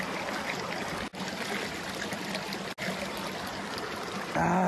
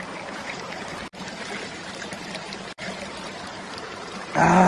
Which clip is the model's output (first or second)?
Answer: second